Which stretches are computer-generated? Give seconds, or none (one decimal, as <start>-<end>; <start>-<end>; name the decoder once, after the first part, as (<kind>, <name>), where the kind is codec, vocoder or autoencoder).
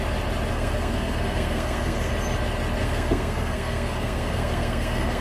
0.5-2.1 (codec, SNAC); 2.8-5.2